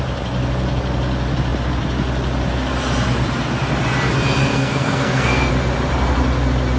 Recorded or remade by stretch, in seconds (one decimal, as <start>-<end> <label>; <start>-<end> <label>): 0.0-4.5 recorded; 4.5-5.5 remade; 5.5-6.8 recorded